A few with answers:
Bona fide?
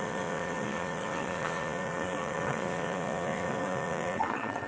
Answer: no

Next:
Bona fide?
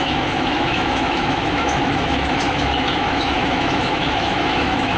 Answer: no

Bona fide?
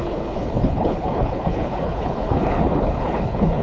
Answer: no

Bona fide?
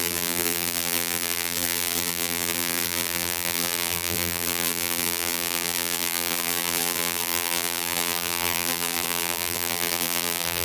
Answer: no